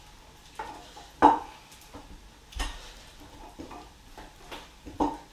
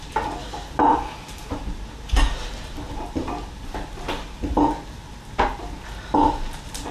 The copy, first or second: first